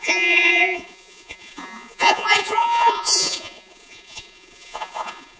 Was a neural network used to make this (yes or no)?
yes